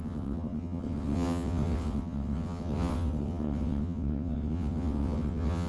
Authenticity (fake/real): fake